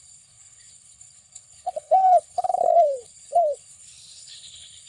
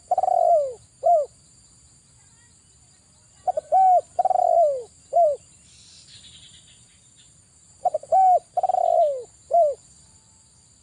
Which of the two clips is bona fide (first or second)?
second